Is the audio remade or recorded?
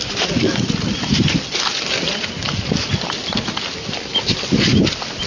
recorded